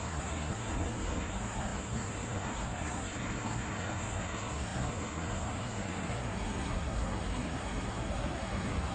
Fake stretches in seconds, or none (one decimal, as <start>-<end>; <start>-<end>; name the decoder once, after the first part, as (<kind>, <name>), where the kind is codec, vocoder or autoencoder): 0.0-8.9 (codec, SNAC)